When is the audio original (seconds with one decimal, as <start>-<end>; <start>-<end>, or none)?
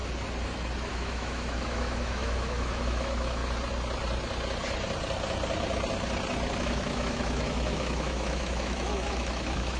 0.0-0.9; 3.4-6.6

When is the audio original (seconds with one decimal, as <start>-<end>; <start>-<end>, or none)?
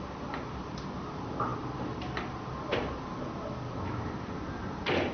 0.0-5.1